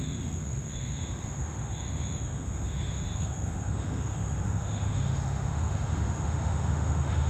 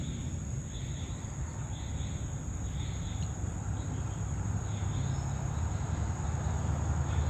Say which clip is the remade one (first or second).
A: first